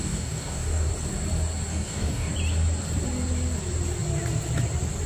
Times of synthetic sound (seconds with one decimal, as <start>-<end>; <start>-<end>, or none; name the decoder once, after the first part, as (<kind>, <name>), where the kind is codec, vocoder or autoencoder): 0.0-0.9 (codec, DAC); 1.7-2.3